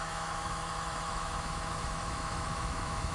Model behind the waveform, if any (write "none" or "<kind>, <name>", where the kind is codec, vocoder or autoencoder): autoencoder, DAC-VAE